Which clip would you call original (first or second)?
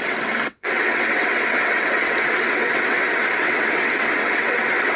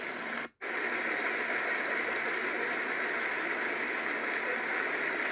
second